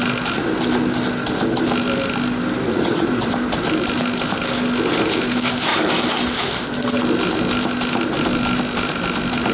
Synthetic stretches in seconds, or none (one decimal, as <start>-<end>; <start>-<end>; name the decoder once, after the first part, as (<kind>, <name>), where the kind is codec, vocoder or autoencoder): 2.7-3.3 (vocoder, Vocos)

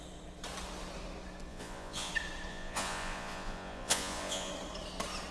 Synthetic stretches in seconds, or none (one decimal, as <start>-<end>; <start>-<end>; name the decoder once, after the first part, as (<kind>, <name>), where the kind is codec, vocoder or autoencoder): 1.5-2.1 (vocoder, Vocos); 2.5-4.5

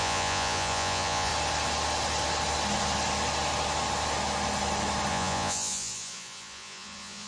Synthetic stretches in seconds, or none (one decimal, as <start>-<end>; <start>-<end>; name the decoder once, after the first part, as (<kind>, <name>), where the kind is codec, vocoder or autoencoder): 0.0-1.3 (vocoder, Vocos); 5.1-7.3

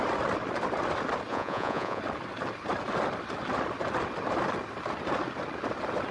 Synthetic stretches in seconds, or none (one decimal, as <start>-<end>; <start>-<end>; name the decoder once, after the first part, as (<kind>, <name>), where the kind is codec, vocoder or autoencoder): 1.3-2.0 (vocoder, Vocos)